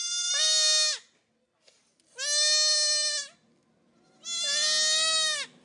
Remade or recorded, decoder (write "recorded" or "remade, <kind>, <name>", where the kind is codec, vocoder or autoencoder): recorded